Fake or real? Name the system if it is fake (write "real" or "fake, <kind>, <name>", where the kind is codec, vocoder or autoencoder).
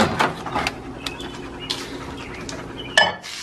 real